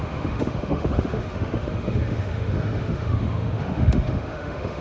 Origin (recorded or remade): remade